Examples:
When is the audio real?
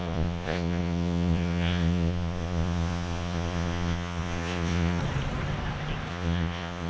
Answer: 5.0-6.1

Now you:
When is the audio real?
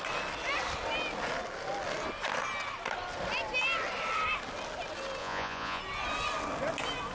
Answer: 0.0-5.2; 5.8-7.1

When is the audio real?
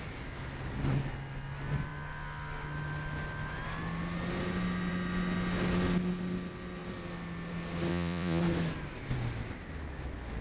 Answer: 0.0-7.9; 8.4-10.4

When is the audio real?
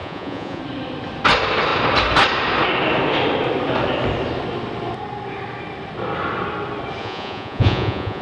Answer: 0.6-7.0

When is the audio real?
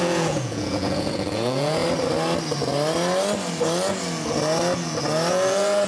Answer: 1.8-5.3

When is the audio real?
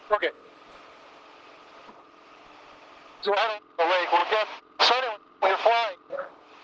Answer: 0.0-6.6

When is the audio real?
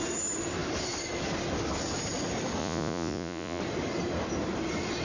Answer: 0.0-2.6; 3.6-5.0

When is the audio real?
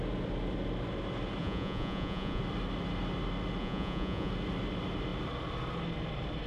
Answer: 0.0-1.4; 2.4-3.6; 4.3-6.5